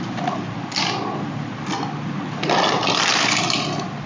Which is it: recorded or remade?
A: recorded